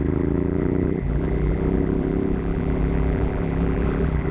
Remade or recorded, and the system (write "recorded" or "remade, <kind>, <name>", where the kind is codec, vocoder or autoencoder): remade, vocoder, BigVGAN v2